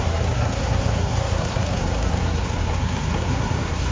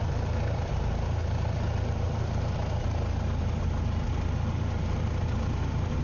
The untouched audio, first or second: second